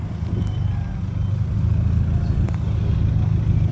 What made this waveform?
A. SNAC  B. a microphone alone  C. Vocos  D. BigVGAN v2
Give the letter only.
B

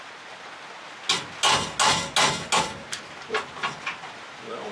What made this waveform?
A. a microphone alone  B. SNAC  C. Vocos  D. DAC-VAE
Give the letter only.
A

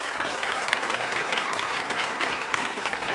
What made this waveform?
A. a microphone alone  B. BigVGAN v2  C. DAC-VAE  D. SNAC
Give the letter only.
D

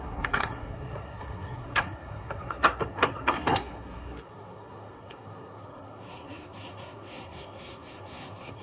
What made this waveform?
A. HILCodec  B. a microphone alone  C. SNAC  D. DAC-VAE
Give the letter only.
C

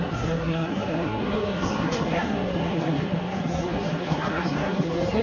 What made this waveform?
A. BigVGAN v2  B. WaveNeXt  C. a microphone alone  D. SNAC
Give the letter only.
D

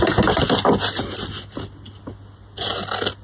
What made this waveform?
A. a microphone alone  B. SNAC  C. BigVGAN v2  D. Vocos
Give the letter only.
A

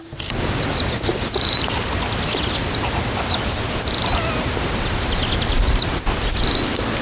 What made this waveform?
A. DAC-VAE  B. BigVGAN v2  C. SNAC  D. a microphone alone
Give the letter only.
D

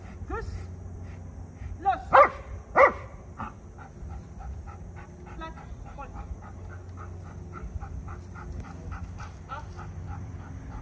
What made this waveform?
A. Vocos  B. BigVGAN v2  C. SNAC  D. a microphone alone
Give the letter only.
D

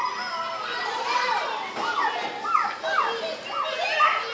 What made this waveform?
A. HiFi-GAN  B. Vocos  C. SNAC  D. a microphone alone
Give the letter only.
D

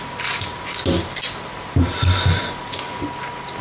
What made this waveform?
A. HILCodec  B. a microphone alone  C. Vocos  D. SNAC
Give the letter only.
B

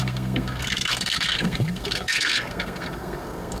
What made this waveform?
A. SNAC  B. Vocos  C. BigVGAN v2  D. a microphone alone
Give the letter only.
A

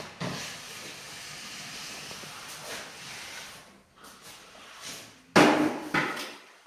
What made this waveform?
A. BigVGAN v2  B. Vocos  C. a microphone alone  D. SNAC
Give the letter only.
C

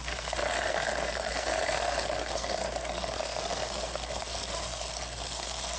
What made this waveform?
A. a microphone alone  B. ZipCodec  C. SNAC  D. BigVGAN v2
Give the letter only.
C